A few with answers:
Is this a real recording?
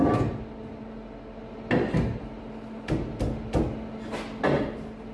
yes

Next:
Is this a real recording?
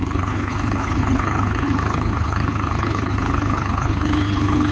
no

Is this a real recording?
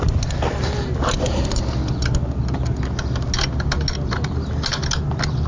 yes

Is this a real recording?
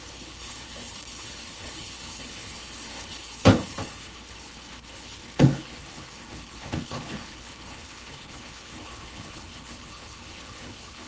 no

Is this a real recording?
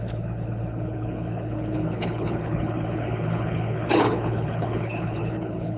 no